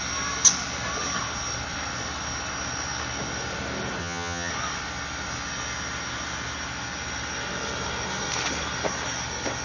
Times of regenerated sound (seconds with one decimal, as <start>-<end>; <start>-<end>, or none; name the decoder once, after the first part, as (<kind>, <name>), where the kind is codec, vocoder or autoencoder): 4.0-4.5 (vocoder, HiFi-GAN)